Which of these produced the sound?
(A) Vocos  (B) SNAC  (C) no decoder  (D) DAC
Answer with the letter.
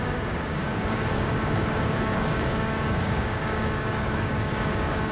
D